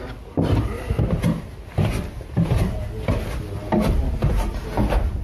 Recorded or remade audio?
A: recorded